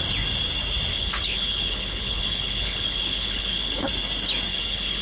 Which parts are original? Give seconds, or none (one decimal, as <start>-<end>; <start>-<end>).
0.0-0.9; 3.9-4.5